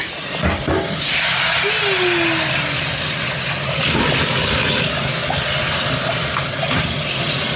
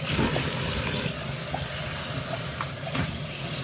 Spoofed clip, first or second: second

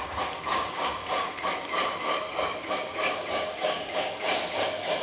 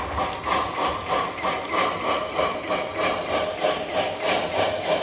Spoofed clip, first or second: first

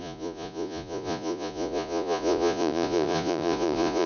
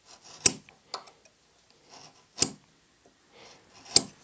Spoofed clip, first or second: first